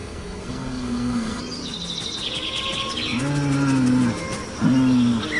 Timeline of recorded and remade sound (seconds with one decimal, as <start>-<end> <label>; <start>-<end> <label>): 0.0-1.4 remade; 1.4-5.4 recorded

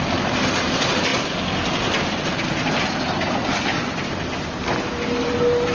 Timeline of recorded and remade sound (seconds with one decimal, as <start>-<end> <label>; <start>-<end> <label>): 0.0-5.7 recorded

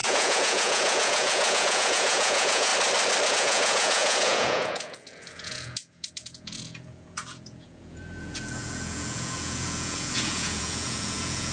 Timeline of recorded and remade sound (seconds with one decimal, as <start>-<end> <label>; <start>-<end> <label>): 0.0-2.7 remade; 2.7-3.3 recorded; 3.3-11.5 remade